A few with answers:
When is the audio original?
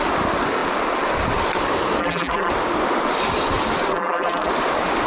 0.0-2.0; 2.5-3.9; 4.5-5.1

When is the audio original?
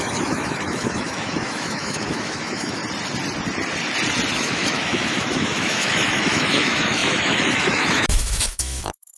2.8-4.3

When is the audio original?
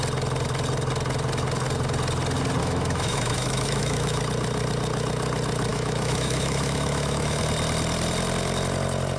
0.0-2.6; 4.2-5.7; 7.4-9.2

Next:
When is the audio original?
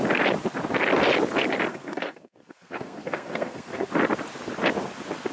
0.0-1.7; 3.9-5.3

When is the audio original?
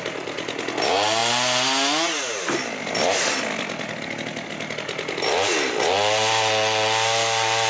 0.0-7.7